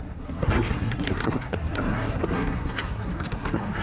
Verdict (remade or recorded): remade